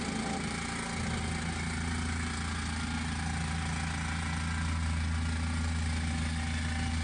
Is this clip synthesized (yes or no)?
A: no